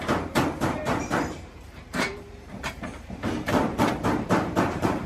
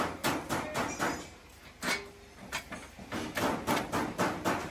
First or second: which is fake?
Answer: first